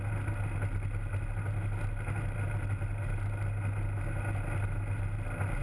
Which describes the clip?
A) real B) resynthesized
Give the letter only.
A